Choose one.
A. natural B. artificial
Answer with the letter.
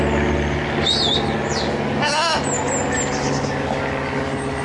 A